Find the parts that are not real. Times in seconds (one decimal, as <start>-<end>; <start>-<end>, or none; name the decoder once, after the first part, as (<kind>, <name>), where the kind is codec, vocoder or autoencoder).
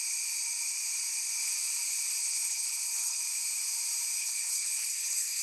2.2-3.2 (codec, HILCodec); 4.2-5.4